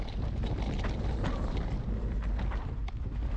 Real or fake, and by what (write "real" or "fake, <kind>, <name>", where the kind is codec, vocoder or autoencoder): real